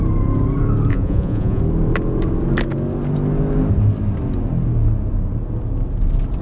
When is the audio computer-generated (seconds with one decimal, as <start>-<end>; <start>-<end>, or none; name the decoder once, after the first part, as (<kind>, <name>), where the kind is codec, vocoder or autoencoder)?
0.9-1.6 (vocoder, Vocos)